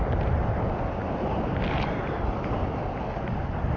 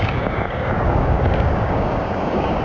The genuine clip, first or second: first